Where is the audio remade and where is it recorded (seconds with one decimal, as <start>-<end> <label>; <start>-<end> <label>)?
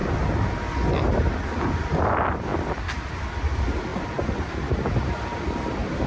0.0-6.1 recorded